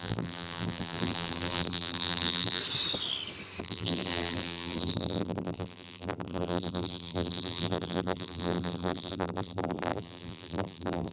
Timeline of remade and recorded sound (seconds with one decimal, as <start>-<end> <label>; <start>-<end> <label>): 0.0-2.6 remade; 2.6-3.6 recorded; 3.6-11.1 remade